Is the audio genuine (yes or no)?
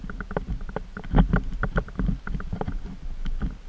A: yes